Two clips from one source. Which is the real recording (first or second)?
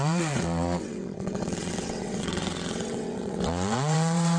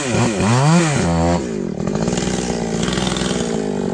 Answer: second